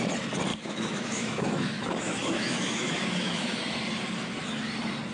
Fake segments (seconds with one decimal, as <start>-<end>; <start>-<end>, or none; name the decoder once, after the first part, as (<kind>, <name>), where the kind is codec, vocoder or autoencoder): 0.5-3.6 (autoencoder, DAC-VAE)